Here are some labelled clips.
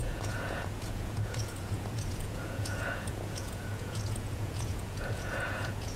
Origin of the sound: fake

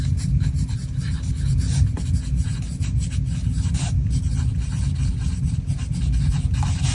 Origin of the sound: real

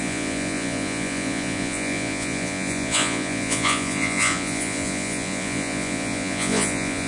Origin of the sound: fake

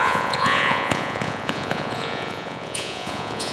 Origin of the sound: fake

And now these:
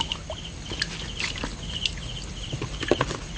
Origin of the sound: real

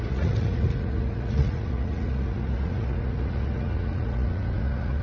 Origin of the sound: fake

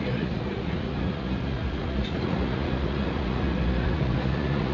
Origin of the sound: fake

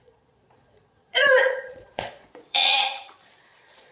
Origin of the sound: fake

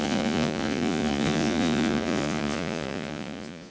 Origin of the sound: fake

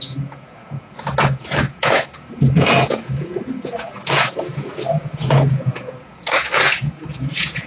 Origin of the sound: fake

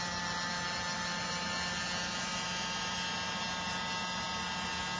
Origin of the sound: real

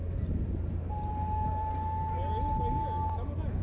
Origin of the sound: real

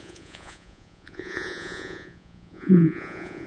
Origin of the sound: fake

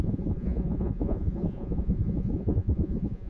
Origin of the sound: fake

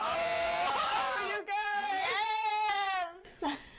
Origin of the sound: fake